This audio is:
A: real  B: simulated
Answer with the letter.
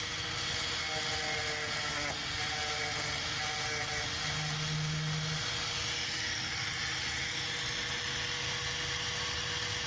A